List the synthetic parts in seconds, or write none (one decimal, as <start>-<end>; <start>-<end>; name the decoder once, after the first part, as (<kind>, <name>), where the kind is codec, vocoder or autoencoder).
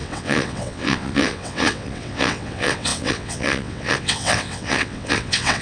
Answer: 0.0-5.6 (vocoder, WaveNeXt)